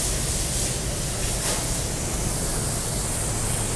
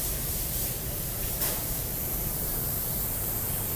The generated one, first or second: second